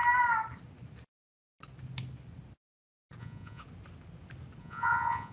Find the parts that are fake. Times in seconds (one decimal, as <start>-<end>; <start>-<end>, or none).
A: 3.2-3.6; 4.6-5.3